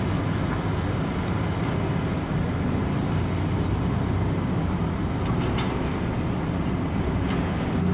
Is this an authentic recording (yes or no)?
yes